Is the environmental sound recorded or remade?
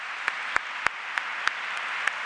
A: recorded